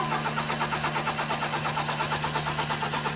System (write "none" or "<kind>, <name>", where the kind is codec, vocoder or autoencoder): none